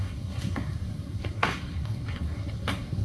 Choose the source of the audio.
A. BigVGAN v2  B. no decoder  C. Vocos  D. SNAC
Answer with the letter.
D